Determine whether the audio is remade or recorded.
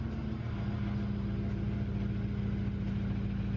recorded